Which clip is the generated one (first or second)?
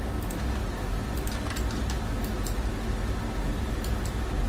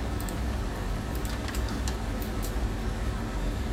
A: second